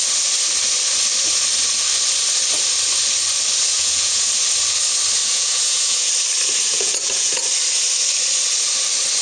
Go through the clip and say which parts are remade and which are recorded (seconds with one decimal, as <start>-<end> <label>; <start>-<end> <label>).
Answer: 0.0-3.7 recorded; 3.7-4.3 remade; 4.3-5.2 recorded; 5.2-6.1 remade; 6.1-6.7 recorded; 6.7-7.4 remade; 7.4-9.2 recorded